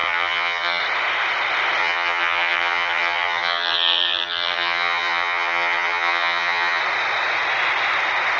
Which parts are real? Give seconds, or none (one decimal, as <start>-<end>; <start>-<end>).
0.8-1.8; 6.8-8.4